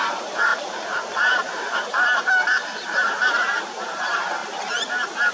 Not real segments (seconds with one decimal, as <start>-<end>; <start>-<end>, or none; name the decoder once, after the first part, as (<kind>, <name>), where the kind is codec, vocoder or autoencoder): 0.0-4.4 (vocoder, BigVGAN v2)